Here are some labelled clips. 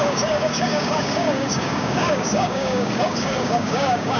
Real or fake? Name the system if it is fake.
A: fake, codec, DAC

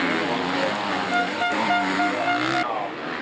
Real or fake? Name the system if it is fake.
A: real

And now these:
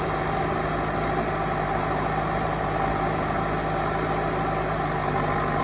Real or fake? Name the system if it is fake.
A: real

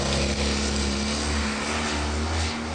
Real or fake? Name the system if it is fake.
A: real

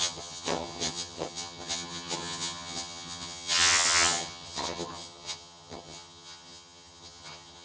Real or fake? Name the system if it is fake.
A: fake, vocoder, HiFi-GAN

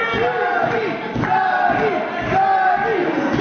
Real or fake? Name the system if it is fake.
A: real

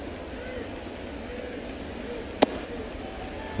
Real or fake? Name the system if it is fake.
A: real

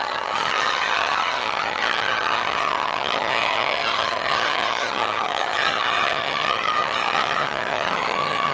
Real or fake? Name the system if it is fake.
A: fake, vocoder, HiFi-GAN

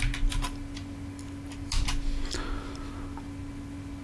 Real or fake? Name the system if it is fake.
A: real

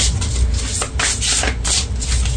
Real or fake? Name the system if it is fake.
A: real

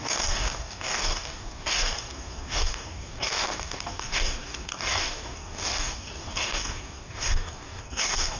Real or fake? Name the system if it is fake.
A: fake, codec, DAC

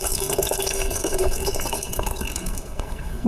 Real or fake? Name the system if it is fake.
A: fake, codec, SNAC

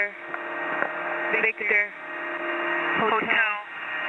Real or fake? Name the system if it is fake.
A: real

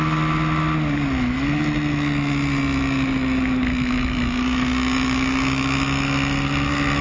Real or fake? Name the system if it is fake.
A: real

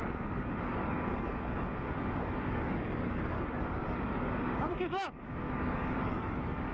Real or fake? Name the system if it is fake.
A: fake, codec, DAC